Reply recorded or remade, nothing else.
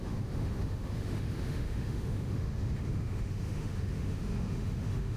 remade